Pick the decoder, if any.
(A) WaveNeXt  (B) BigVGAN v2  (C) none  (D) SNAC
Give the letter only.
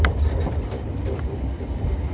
C